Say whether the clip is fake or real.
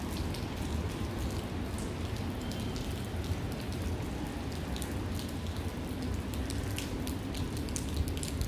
real